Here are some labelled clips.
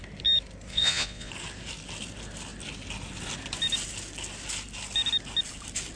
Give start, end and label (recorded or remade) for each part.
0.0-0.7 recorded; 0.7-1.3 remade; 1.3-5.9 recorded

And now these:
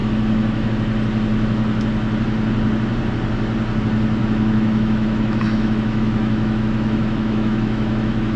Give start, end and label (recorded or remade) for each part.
0.0-0.7 remade; 0.7-4.2 recorded; 4.2-8.4 remade

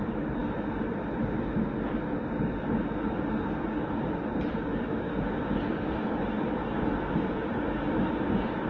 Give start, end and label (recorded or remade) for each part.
0.0-8.7 recorded

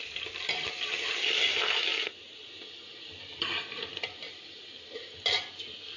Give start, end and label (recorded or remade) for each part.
0.0-6.0 recorded